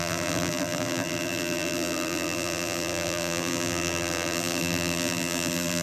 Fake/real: fake